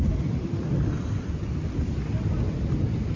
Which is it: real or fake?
real